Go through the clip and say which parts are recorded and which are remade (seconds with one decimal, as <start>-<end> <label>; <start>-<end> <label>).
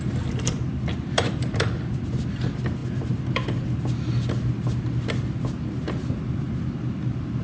0.0-7.4 recorded